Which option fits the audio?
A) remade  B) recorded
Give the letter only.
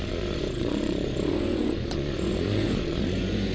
A